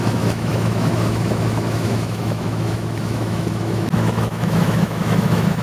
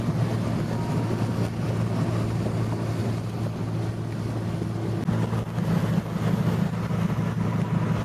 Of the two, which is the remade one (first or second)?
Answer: first